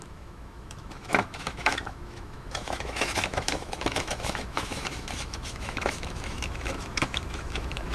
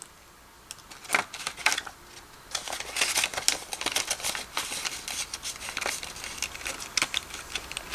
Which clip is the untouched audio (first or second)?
second